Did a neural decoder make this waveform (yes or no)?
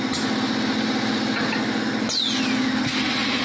no